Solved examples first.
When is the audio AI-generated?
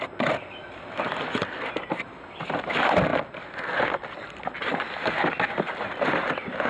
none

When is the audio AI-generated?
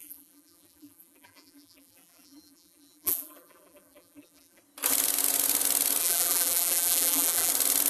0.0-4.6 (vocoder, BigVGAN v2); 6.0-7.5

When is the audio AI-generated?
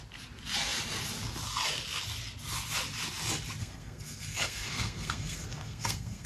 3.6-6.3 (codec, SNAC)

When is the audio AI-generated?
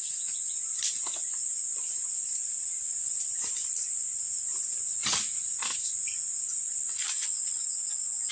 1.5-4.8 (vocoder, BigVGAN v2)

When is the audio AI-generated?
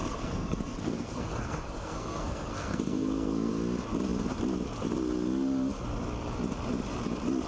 0.0-3.5 (codec, SNAC)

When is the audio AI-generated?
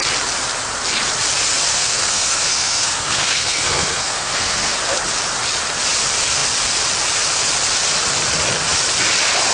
1.7-4.8 (codec, SNAC)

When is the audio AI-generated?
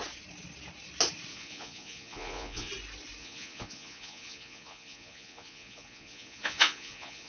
1.3-2.7 (vocoder, Vocos); 3.2-7.3